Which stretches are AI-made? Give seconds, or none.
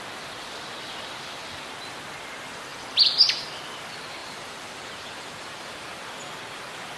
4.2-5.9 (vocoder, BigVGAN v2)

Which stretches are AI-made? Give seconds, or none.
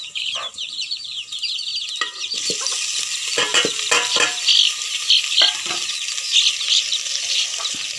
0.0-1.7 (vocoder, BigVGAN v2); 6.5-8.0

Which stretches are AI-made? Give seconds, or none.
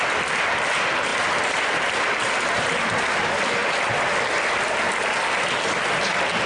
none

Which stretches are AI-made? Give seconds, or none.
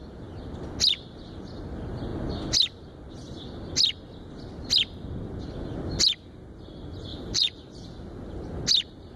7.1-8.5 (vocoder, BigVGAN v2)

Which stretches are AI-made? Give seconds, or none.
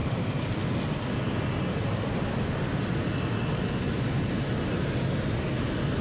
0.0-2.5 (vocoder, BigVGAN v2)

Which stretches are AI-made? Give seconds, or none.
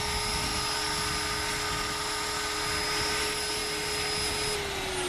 none